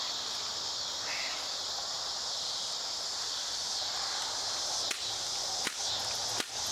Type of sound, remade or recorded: recorded